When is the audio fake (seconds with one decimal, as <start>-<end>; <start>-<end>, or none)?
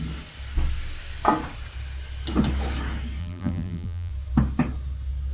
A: 3.2-4.1